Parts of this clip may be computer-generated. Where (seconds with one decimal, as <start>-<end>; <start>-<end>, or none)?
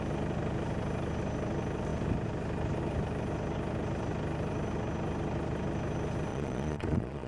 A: 6.3-7.3